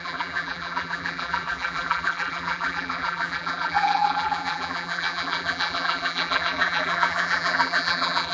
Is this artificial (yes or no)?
yes